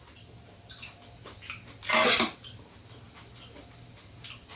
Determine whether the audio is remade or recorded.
recorded